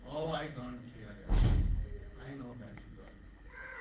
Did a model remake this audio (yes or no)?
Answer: yes